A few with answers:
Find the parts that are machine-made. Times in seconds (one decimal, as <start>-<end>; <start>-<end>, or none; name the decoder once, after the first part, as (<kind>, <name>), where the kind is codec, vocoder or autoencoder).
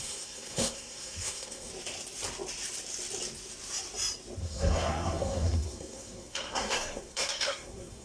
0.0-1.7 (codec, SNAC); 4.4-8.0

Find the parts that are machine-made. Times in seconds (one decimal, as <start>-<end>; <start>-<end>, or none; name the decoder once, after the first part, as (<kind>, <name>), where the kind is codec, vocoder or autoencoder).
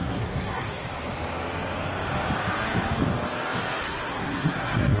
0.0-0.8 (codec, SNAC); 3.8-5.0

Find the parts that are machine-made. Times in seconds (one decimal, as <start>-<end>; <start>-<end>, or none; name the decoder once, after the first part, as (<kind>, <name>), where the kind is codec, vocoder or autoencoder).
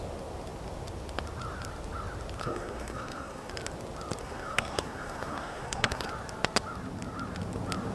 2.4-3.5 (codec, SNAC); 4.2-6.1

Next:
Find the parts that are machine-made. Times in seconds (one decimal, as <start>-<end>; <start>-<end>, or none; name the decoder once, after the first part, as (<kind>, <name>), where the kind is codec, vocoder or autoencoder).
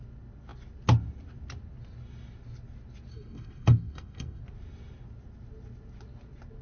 3.1-4.4 (codec, SNAC)